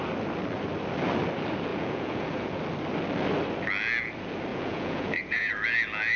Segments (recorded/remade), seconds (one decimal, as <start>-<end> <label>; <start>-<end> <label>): 0.0-1.7 recorded; 1.7-2.6 remade; 2.6-4.5 recorded; 4.5-5.5 remade; 5.5-6.2 recorded